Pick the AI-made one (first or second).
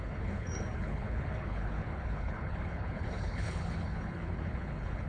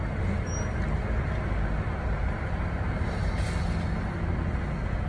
first